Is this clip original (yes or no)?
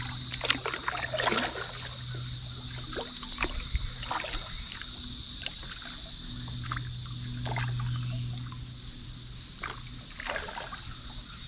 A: yes